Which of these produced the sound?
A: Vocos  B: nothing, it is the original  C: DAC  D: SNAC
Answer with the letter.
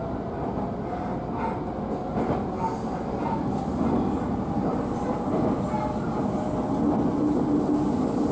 B